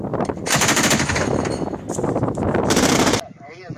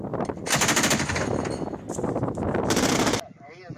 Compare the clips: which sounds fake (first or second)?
first